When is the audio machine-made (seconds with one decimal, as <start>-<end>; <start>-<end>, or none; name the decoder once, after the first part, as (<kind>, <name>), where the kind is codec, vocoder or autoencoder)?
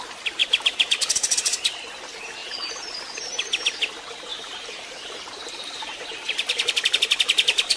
4.3-7.8 (vocoder, BigVGAN v2)